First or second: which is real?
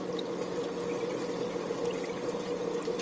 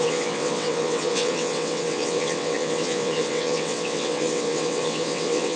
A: first